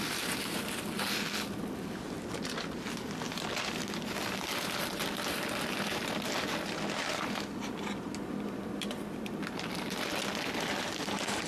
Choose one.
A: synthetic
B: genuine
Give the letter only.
B